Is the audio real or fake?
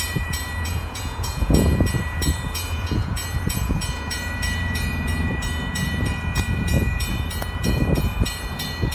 fake